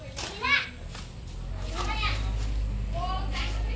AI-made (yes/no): no